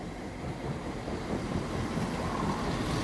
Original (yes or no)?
yes